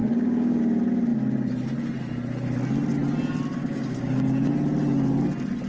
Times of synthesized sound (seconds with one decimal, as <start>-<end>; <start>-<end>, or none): 0.0-0.6; 3.6-4.5